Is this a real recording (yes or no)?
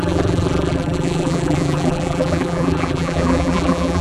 no